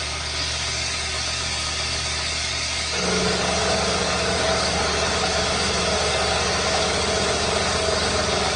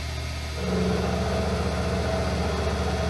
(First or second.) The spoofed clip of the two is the first